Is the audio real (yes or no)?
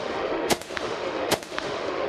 no